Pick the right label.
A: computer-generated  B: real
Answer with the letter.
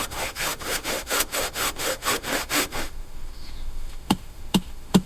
A